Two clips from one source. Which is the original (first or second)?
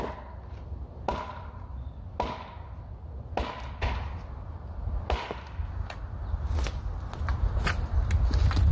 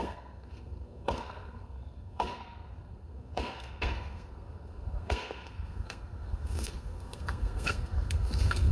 first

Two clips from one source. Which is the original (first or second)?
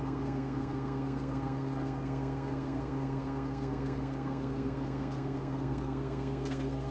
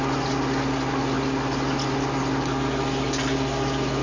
second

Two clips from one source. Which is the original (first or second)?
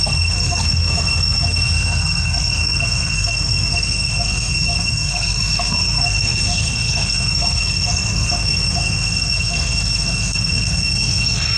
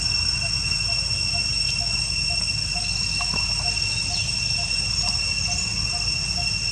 second